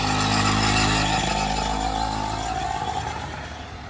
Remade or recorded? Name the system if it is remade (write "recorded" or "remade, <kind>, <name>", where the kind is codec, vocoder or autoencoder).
recorded